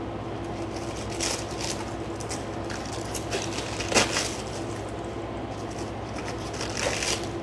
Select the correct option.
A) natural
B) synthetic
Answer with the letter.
A